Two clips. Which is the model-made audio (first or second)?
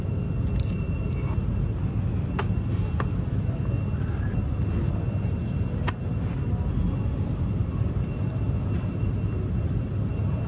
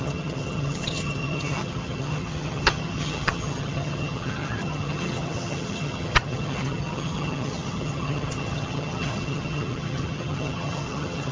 second